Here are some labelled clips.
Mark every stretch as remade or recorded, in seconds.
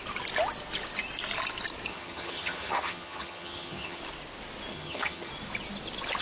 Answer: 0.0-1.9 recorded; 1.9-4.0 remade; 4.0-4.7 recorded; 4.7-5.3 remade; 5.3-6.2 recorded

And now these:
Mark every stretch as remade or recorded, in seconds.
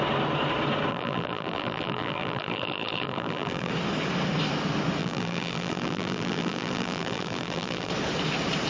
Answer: 0.0-0.9 recorded; 0.9-3.7 remade; 3.7-5.0 recorded; 5.0-7.9 remade; 7.9-8.7 recorded